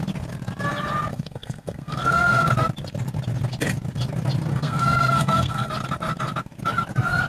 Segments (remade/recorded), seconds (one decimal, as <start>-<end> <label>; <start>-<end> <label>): 0.0-1.1 recorded; 1.1-2.5 remade; 2.5-4.5 recorded; 4.5-5.7 remade; 5.7-7.3 recorded